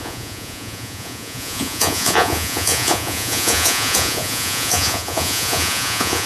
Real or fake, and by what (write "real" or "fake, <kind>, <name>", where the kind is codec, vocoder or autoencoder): fake, vocoder, Vocos